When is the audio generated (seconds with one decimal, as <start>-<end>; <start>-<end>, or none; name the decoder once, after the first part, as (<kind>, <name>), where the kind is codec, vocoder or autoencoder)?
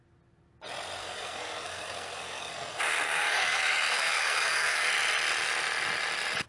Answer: 1.0-4.9 (codec, SNAC)